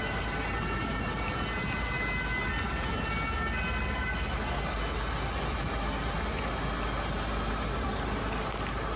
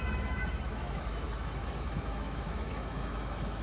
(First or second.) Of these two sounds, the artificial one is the second